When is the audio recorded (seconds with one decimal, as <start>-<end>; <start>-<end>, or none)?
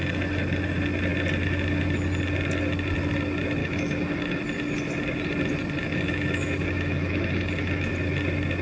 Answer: 0.0-3.6; 4.4-5.8; 7.9-8.6